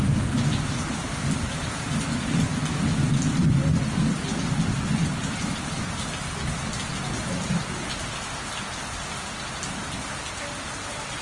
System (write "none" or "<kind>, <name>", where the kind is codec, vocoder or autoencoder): none